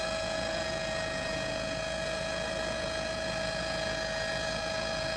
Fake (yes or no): yes